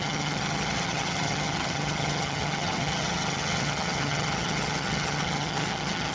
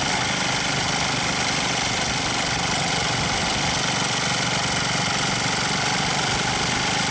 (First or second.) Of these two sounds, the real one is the second